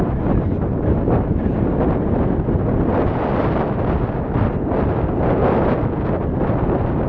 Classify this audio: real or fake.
real